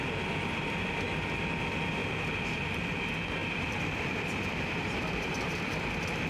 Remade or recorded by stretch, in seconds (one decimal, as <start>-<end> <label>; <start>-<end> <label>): 0.0-2.0 recorded; 2.0-2.9 remade; 2.9-3.4 recorded; 3.4-5.3 remade; 5.3-6.3 recorded